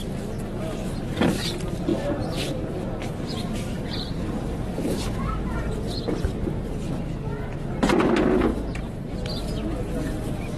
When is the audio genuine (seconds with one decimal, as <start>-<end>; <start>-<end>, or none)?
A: 0.0-1.9; 5.4-8.5; 9.1-10.6